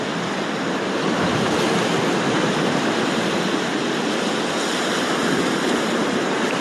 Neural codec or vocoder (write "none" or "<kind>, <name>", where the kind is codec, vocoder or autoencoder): none